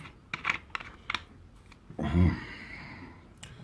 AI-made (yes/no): no